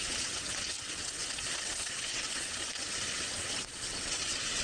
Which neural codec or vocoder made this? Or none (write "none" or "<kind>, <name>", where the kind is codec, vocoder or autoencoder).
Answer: vocoder, WaveNeXt